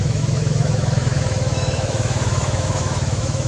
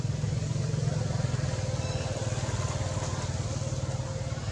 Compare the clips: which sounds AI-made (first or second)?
first